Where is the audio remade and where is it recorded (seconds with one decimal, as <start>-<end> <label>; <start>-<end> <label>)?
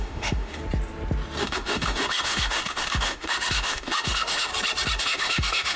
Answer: 0.0-0.6 remade; 0.6-1.4 recorded; 1.4-4.5 remade; 4.5-5.0 recorded; 5.0-5.8 remade